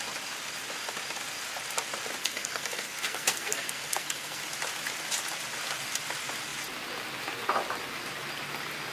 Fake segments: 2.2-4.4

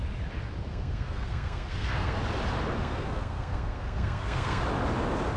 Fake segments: 0.7-2.2; 2.8-4.6

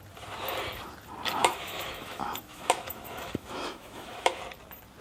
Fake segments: 1.4-4.4

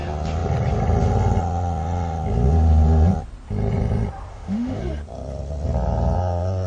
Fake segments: 4.3-4.8

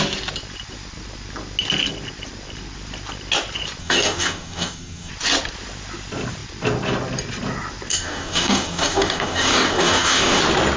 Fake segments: 3.8-5.1; 7.9-10.4

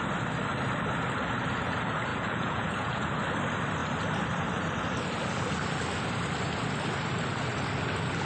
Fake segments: 2.1-3.1

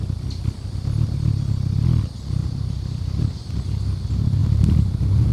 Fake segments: 2.4-3.1; 4.4-5.3

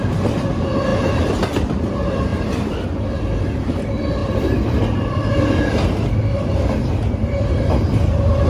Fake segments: 0.9-1.9; 2.3-3.0; 4.2-6.1